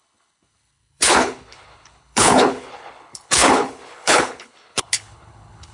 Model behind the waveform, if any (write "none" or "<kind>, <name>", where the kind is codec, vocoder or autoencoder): codec, HILCodec